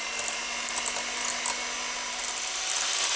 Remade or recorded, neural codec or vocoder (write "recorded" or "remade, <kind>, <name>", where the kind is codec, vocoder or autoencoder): recorded